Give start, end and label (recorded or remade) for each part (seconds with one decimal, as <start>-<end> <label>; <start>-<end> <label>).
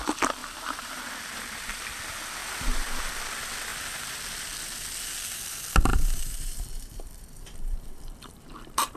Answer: 0.0-0.4 recorded; 0.4-1.1 remade; 1.1-2.4 recorded; 2.4-3.1 remade; 3.1-3.7 recorded; 3.7-4.5 remade; 4.5-5.9 recorded; 5.9-9.0 remade